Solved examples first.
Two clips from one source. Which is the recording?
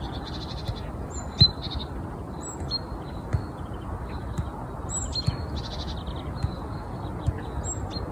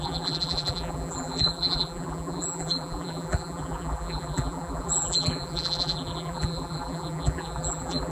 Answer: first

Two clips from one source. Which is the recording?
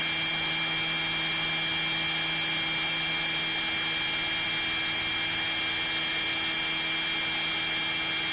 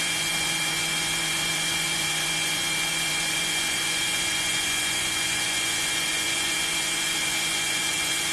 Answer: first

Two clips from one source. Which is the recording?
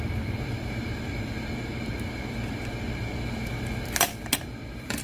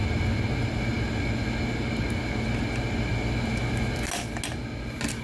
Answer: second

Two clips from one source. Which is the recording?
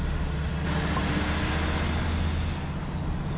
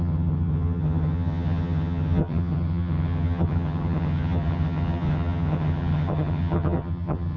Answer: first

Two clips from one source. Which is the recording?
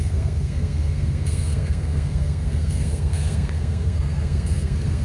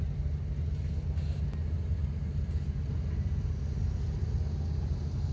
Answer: second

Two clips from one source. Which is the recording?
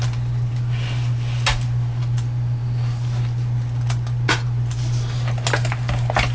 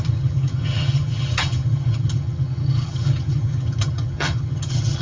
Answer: first